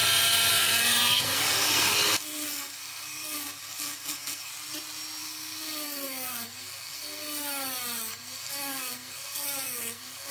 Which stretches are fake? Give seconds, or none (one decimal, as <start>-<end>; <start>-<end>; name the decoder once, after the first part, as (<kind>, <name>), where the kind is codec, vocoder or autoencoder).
0.5-4.5 (codec, SNAC); 5.2-10.3